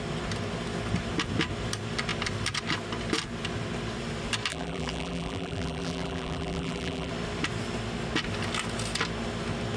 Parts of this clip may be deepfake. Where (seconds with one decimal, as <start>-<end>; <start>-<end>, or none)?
4.5-7.1